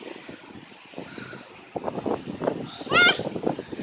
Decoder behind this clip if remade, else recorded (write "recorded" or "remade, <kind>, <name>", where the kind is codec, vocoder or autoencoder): recorded